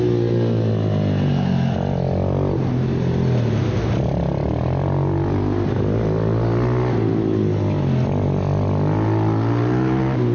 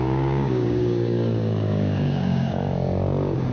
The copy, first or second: second